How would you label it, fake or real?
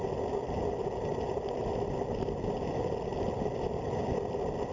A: real